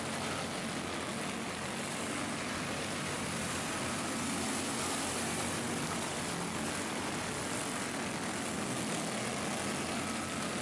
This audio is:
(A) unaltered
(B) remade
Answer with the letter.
A